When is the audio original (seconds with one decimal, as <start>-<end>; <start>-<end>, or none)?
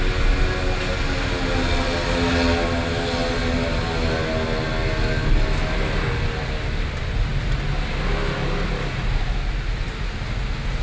0.0-10.8